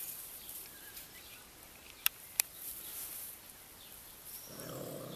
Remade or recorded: remade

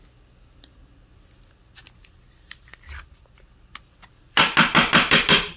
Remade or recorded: recorded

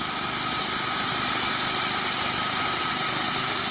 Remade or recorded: recorded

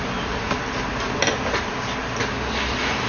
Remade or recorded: recorded